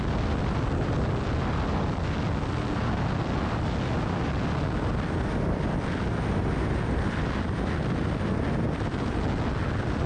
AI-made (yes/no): no